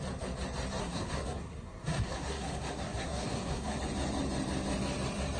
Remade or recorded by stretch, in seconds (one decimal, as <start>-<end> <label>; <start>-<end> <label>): 0.0-0.8 recorded; 0.8-3.8 remade; 3.8-5.4 recorded